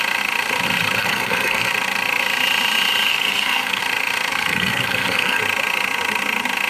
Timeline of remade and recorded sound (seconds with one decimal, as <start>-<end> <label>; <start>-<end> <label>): 0.0-1.0 recorded; 1.0-1.7 remade; 1.7-3.1 recorded; 3.1-3.8 remade; 3.8-4.3 recorded; 4.3-5.4 remade; 5.4-6.7 recorded